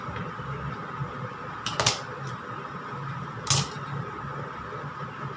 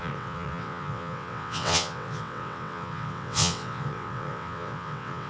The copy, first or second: second